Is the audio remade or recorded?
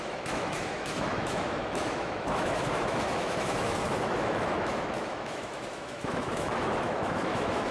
remade